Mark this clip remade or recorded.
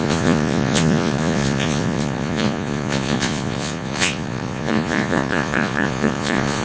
remade